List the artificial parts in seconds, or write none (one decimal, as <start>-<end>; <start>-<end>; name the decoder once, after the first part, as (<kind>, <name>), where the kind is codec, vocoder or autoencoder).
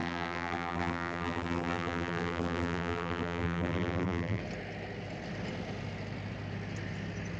0.0-4.4 (vocoder, BigVGAN v2)